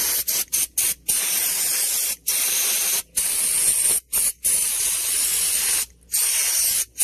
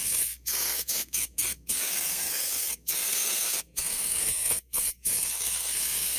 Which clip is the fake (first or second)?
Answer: second